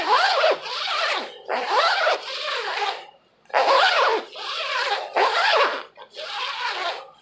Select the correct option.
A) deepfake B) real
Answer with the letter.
B